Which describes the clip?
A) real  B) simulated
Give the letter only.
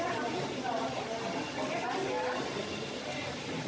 A